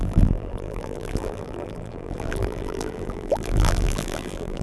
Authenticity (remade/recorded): remade